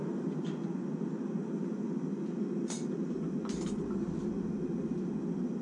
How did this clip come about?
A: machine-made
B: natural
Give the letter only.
B